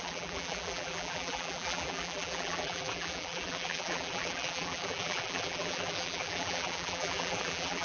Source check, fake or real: fake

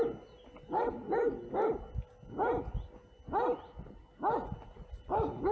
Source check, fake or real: real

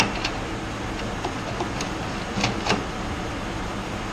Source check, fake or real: fake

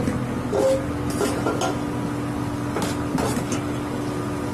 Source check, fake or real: real